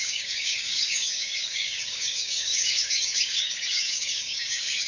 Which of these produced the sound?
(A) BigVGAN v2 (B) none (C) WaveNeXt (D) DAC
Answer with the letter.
D